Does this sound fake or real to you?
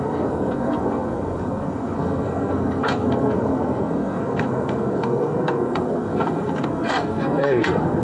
fake